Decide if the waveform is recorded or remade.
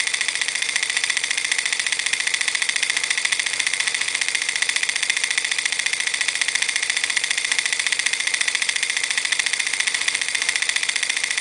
remade